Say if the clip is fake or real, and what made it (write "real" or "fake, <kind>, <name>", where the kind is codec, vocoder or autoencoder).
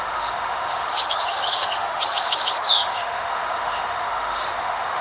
fake, autoencoder, DAC-VAE